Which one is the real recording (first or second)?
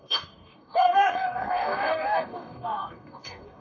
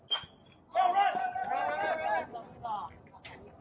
second